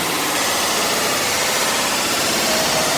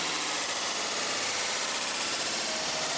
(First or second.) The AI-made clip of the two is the first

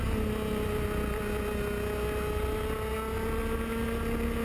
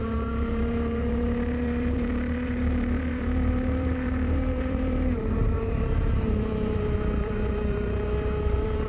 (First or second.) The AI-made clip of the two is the second